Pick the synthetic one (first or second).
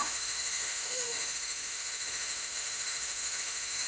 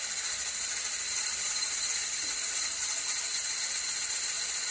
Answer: first